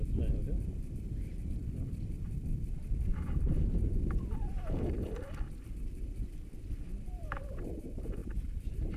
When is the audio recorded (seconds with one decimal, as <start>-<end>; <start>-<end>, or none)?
0.0-3.1; 3.9-8.2